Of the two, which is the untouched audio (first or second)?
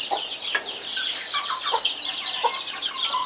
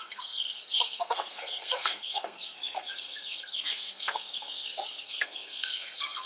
first